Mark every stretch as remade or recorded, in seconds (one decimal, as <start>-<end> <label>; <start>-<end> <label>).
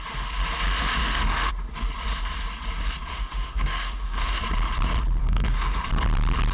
0.0-1.0 recorded; 1.0-1.5 remade; 1.5-3.1 recorded; 3.1-4.4 remade; 4.4-5.2 recorded; 5.2-5.9 remade; 5.9-6.5 recorded